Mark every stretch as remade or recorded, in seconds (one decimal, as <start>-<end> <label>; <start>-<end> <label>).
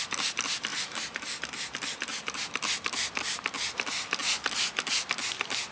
0.0-0.7 recorded; 0.7-1.4 remade; 1.4-5.7 recorded